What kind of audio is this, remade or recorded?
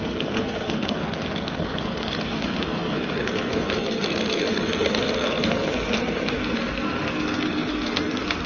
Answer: remade